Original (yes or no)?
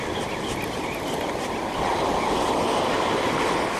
yes